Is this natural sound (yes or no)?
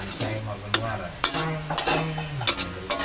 yes